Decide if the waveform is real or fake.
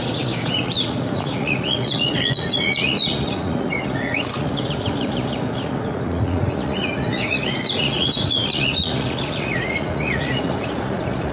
fake